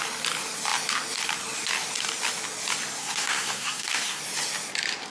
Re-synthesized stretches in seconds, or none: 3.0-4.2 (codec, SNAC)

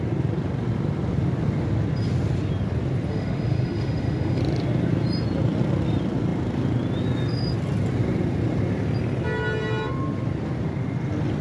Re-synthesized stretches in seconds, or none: 3.1-4.4 (autoencoder, DAC-VAE)